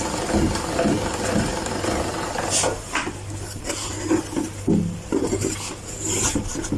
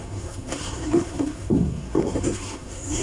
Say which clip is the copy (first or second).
second